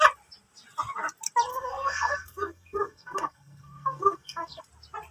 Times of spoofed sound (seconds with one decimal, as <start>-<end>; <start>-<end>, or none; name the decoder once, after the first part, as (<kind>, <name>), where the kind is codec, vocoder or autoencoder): 1.5-4.6 (codec, SNAC)